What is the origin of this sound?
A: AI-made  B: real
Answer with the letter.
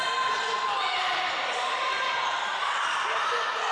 B